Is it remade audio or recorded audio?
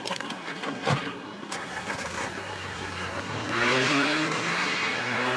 remade